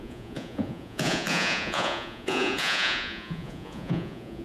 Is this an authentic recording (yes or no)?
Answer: no